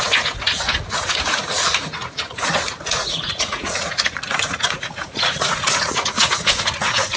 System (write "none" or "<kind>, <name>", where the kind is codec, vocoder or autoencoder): vocoder, Vocos